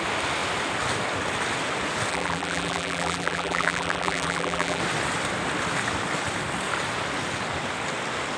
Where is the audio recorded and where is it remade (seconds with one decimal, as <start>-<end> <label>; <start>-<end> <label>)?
0.0-2.1 recorded; 2.1-4.8 remade; 4.8-8.4 recorded